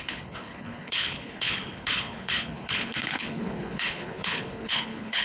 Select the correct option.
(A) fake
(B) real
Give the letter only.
A